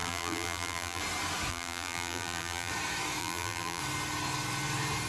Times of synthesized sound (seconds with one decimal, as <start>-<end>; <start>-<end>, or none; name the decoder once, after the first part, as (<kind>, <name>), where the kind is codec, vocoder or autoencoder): 0.0-1.0 (vocoder, BigVGAN v2); 1.5-2.7; 3.2-3.8